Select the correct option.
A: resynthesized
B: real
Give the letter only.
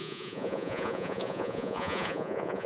A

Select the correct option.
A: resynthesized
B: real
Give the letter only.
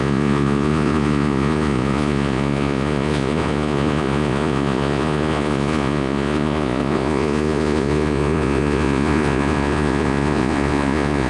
A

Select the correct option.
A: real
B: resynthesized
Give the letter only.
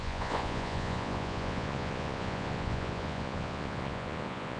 B